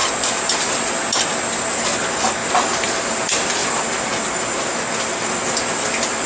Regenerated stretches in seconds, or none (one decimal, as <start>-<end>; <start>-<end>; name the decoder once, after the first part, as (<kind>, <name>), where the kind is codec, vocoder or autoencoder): none